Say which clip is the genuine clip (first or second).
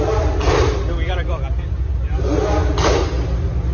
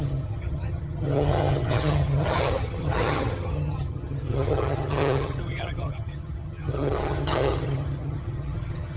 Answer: first